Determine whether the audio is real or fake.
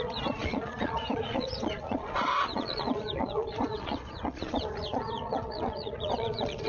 fake